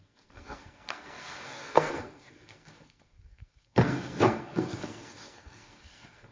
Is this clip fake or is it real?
fake